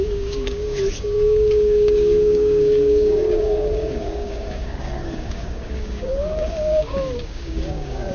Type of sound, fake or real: fake